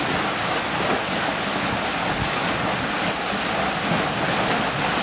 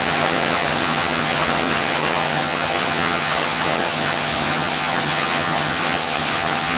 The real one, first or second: first